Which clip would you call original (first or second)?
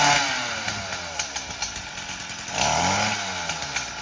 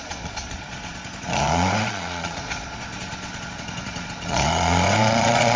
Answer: first